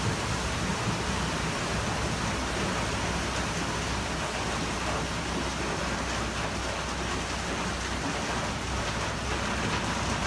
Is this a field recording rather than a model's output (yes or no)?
yes